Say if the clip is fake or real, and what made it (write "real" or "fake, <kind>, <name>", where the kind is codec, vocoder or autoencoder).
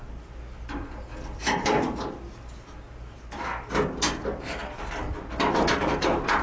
real